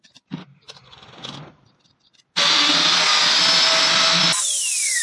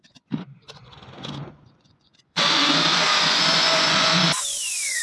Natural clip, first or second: first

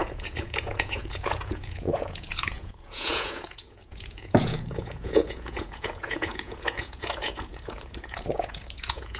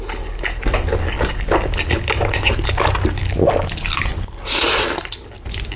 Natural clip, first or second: second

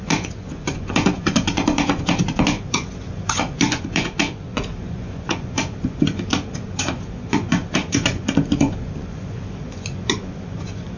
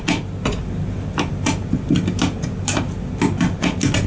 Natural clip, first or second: second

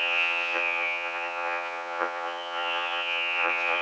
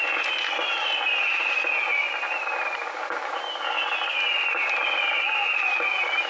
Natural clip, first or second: second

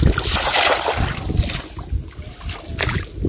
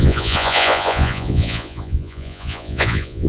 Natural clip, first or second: first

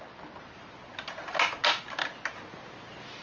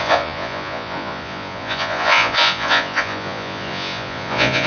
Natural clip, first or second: first